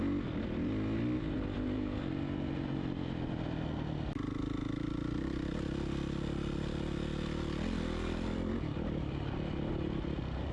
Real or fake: real